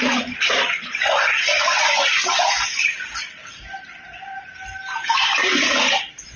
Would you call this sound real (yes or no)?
yes